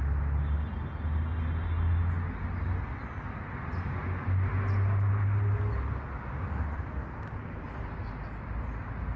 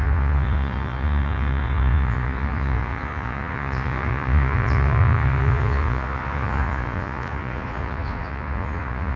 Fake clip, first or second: second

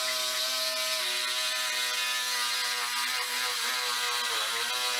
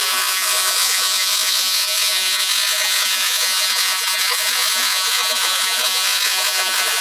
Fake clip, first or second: second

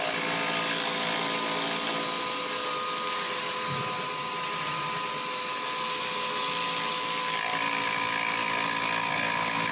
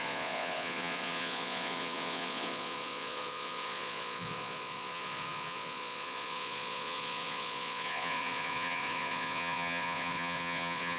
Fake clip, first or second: second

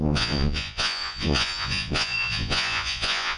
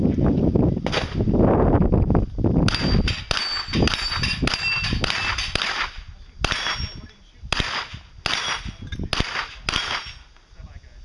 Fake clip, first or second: first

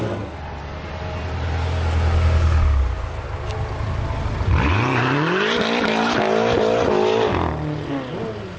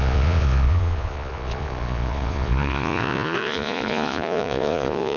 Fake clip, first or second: second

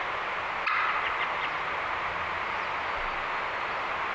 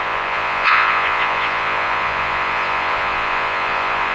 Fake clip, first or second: second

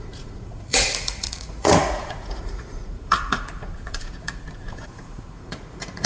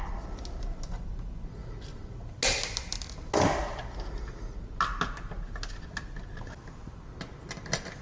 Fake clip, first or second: first